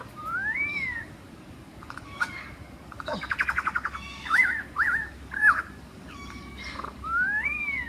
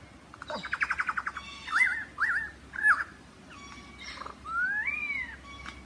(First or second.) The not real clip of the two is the first